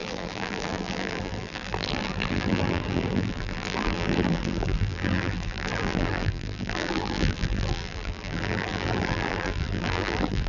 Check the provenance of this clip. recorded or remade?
remade